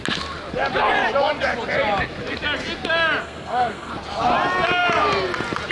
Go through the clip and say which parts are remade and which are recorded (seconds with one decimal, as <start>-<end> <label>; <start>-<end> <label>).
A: 0.0-3.2 recorded; 3.2-3.9 remade; 3.9-5.7 recorded

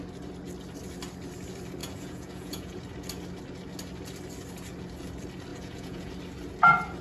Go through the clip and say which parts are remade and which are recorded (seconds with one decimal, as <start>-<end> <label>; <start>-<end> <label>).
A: 0.0-1.8 recorded; 1.8-2.8 remade; 2.8-5.5 recorded; 5.5-6.1 remade; 6.1-7.0 recorded

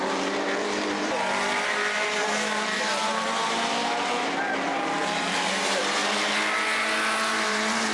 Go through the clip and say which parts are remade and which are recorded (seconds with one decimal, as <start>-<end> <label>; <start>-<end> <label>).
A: 0.0-6.0 remade; 6.0-7.3 recorded; 7.3-7.9 remade

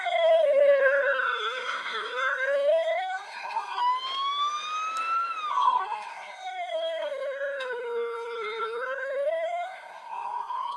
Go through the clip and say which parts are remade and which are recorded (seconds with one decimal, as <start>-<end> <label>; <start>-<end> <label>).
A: 0.0-3.8 remade; 3.8-5.5 recorded; 5.5-10.8 remade